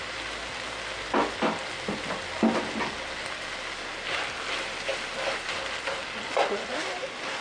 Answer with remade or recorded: recorded